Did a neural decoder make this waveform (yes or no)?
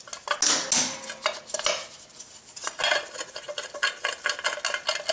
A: no